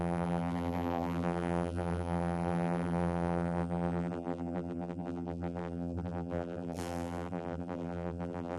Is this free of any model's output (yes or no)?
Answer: no